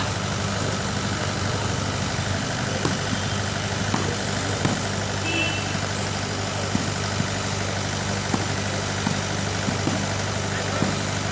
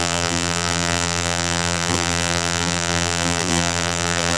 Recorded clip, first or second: first